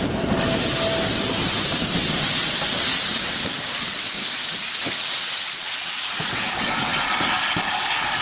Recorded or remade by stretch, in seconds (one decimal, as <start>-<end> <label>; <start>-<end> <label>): 0.0-2.9 recorded; 2.9-4.0 remade; 4.0-4.4 recorded; 4.4-7.0 remade; 7.0-8.2 recorded